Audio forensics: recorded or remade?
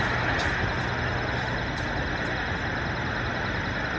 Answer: recorded